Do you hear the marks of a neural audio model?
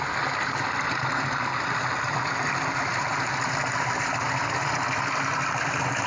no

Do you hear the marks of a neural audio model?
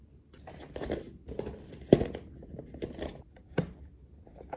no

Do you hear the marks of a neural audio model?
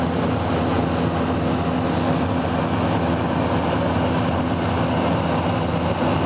no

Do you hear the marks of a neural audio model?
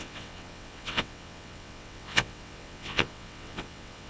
yes